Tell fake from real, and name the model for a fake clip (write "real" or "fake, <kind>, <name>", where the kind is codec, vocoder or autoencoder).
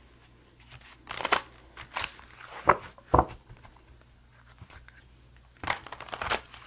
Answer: real